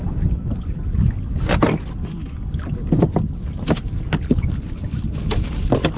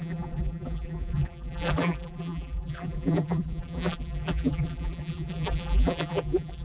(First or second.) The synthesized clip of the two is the second